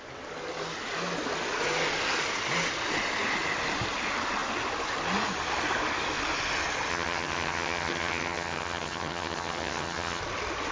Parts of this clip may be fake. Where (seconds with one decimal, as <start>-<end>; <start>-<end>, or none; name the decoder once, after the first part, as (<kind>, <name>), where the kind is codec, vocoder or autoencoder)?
6.9-10.2 (vocoder, HiFi-GAN)